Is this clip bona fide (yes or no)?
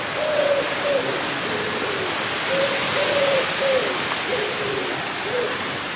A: yes